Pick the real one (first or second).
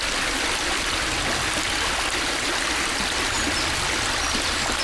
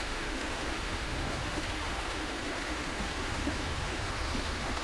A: first